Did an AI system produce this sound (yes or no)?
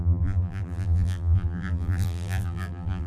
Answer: yes